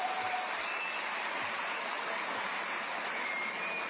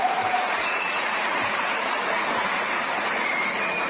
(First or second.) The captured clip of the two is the first